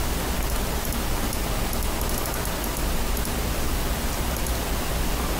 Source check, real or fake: real